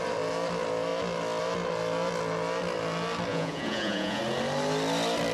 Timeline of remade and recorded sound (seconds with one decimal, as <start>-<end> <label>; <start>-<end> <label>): 0.0-3.3 recorded; 3.3-4.2 remade; 4.2-5.3 recorded